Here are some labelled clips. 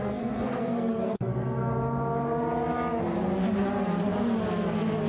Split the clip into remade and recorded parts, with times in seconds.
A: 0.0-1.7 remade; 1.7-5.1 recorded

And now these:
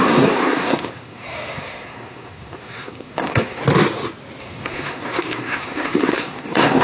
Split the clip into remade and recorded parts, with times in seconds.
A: 0.0-3.6 remade; 3.6-4.4 recorded; 4.4-6.8 remade

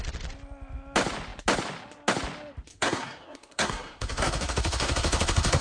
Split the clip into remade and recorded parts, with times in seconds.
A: 0.0-2.7 recorded; 2.7-5.6 remade

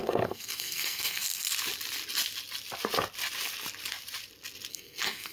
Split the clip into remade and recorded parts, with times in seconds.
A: 0.0-1.5 remade; 1.5-4.7 recorded; 4.7-5.3 remade

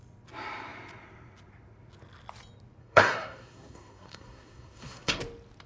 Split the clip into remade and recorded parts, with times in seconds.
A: 0.0-2.8 recorded; 2.8-5.2 remade; 5.2-5.7 recorded

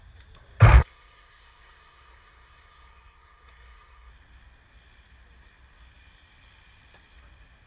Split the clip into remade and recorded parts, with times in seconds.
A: 0.0-0.7 recorded; 0.7-4.1 remade; 4.1-7.7 recorded